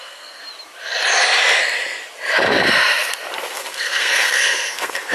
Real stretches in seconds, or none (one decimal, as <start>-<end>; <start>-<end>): 0.4-3.5